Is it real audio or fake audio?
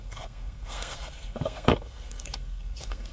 fake